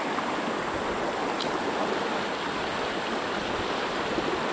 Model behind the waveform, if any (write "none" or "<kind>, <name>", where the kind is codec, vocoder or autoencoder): none